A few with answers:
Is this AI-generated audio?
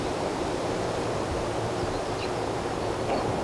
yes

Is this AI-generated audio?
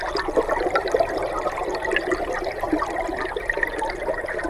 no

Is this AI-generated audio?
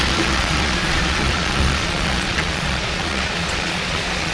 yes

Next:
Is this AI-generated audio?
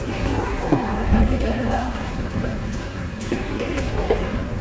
yes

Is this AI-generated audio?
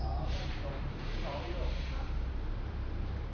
yes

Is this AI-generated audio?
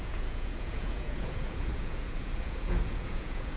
yes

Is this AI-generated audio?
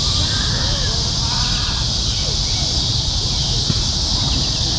no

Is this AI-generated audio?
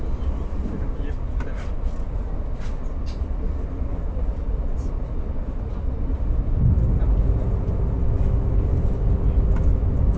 no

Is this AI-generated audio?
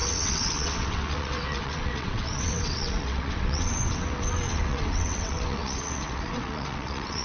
yes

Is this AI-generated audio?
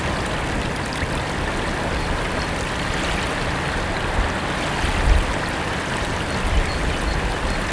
no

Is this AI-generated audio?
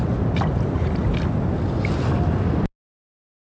no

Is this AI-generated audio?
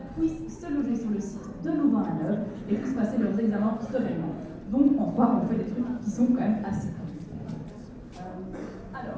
no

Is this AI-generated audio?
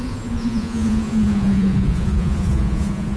yes